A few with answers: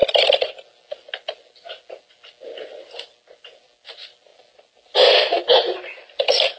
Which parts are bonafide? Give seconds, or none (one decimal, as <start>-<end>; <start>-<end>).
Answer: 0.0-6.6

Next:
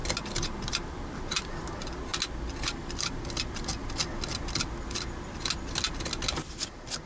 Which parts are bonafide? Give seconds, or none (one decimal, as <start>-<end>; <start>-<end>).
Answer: 0.0-7.1

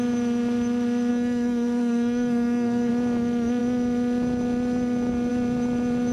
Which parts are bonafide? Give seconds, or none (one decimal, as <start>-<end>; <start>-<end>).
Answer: 0.0-1.1; 2.9-6.1